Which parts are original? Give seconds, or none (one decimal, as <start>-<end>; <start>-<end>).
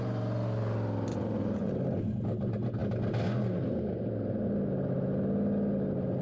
0.0-1.1; 1.7-6.2